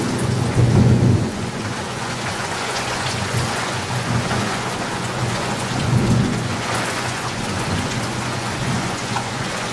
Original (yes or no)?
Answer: no